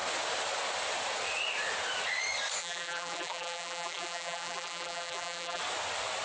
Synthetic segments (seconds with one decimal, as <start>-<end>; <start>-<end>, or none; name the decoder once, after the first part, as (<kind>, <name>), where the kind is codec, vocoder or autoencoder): 2.6-5.6 (vocoder, BigVGAN v2)